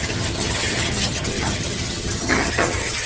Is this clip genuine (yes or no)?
no